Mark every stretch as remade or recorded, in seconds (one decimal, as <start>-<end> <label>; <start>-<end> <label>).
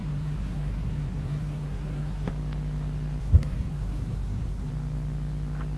0.0-2.3 remade; 2.3-3.2 recorded; 3.2-4.7 remade; 4.7-5.8 recorded